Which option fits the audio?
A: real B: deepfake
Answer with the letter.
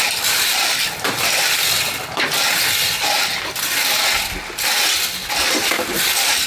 A